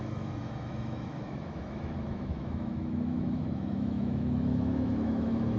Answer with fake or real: fake